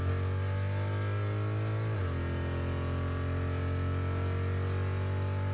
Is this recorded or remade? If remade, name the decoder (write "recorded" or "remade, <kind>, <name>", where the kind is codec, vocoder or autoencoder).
recorded